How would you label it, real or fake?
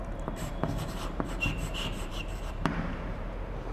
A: fake